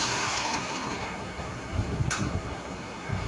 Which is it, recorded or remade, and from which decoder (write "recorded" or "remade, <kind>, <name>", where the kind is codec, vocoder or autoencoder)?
remade, codec, SNAC